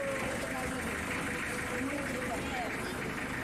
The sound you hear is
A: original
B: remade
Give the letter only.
A